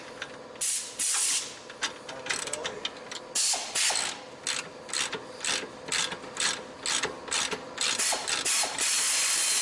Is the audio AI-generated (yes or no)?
no